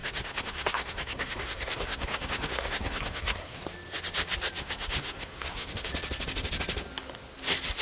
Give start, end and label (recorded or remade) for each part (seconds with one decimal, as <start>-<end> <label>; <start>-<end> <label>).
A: 0.0-3.6 remade; 3.6-4.6 recorded; 4.6-5.9 remade; 5.9-7.8 recorded